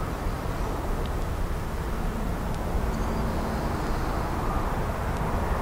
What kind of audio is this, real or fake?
real